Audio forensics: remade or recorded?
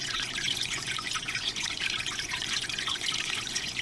remade